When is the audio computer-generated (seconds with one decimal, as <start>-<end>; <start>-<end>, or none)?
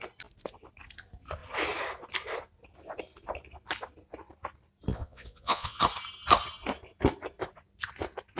4.9-5.8